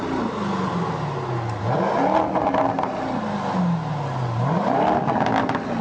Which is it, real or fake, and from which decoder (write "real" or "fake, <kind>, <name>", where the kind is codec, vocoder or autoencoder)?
real